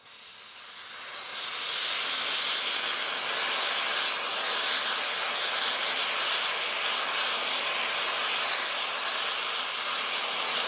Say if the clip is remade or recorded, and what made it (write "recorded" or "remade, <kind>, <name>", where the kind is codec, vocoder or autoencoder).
recorded